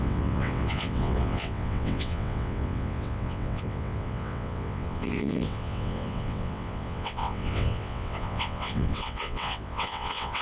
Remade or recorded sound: remade